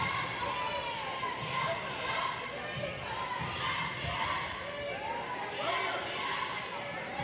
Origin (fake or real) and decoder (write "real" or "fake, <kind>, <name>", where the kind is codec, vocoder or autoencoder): real